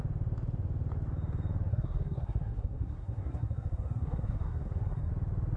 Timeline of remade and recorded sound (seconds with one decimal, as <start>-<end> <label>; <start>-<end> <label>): 0.0-1.7 recorded; 1.7-5.1 remade; 5.1-5.6 recorded